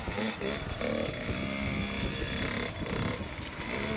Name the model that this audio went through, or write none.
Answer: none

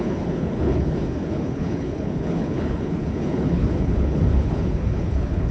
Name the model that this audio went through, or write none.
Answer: codec, HILCodec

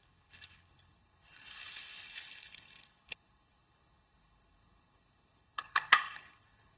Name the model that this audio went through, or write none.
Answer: codec, HILCodec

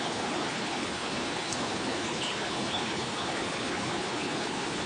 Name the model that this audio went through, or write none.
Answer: codec, HILCodec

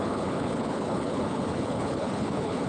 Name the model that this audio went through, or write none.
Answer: codec, HILCodec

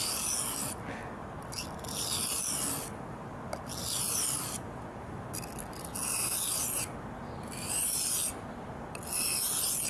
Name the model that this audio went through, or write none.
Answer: none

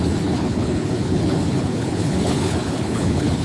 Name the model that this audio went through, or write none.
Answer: codec, HILCodec